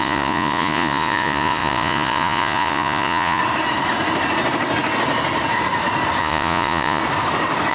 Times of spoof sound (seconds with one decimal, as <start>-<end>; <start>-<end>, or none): 0.0-3.4; 6.2-7.0